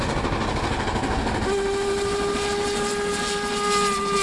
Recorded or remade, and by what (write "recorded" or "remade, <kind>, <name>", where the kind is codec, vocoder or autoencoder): recorded